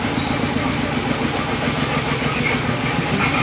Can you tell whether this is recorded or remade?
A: recorded